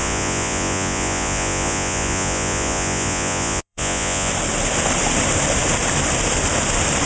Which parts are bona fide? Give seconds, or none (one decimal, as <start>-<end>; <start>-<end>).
4.3-7.1